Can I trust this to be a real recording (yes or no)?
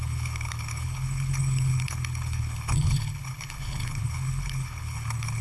no